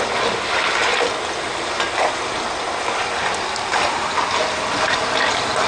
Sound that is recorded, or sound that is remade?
recorded